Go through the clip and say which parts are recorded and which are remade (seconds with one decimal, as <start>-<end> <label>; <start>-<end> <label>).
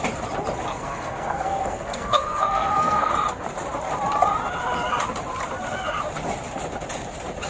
0.0-0.7 recorded; 0.7-3.1 remade; 3.1-7.5 recorded